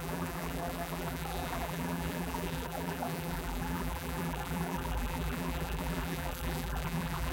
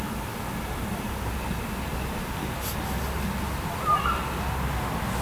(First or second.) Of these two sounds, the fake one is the first